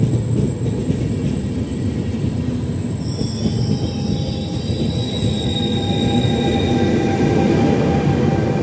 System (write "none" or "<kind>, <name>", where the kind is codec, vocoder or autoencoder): none